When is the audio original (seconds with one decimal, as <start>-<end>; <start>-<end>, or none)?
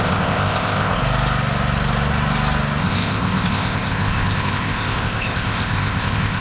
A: 1.0-2.8